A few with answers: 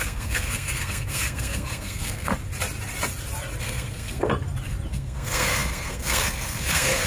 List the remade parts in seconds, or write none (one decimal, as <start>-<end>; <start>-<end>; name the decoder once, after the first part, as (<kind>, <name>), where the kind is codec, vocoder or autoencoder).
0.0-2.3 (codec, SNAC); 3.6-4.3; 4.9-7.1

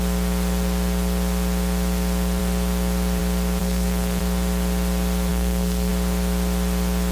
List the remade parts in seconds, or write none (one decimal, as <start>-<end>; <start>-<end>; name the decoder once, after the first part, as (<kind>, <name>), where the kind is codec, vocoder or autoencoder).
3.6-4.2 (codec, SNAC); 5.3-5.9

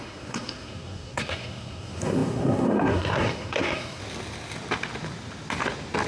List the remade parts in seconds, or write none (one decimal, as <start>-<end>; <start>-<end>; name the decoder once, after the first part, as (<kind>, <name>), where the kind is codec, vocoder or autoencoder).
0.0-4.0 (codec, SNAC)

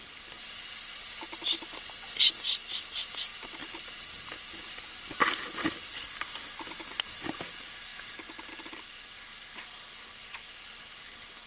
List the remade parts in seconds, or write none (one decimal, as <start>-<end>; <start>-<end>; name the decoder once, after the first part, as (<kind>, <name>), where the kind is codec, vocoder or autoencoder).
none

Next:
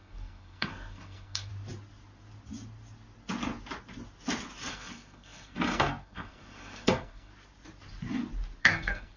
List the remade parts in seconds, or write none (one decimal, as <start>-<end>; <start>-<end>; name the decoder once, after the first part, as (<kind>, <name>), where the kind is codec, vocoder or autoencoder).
0.0-1.5 (codec, SNAC); 4.7-7.3; 8.6-9.2

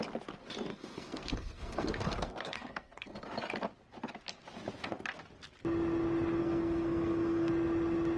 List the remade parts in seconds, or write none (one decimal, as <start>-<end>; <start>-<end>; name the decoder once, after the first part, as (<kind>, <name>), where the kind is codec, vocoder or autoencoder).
0.7-3.1 (codec, SNAC); 6.4-7.5